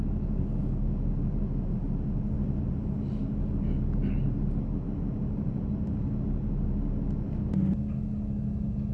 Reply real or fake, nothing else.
real